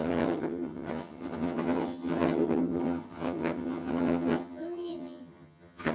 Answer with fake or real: fake